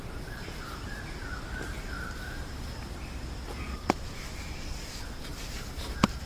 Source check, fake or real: fake